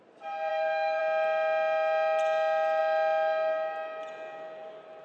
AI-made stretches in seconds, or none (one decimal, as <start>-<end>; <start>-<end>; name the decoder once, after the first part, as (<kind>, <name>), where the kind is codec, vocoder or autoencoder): 0.5-1.0 (codec, SNAC)